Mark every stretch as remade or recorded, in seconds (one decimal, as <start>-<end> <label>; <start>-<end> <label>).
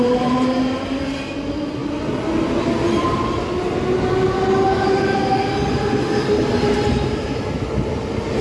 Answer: 0.0-8.4 recorded